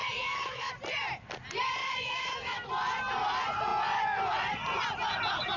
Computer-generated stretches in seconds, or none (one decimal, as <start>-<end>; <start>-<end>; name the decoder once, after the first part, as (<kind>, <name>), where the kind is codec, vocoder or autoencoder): 0.0-0.7 (autoencoder, DAC-VAE); 1.8-2.7